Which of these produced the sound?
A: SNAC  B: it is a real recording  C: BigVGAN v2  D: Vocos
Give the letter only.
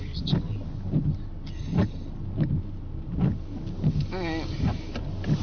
B